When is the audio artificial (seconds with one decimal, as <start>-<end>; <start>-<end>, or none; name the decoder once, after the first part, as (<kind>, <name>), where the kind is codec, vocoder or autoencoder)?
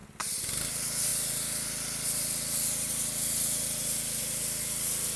none